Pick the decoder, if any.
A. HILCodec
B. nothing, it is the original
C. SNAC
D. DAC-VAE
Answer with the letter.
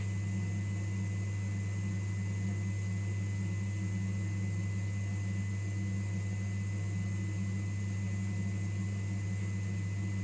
B